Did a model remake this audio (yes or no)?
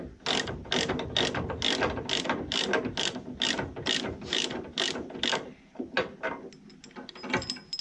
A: no